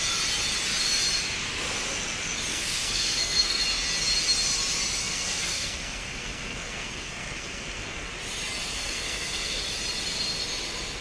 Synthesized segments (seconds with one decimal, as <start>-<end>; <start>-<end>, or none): 2.5-3.6; 5.0-8.1; 8.7-9.6